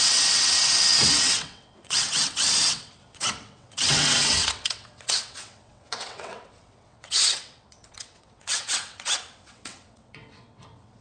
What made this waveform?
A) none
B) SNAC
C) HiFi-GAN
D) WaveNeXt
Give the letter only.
D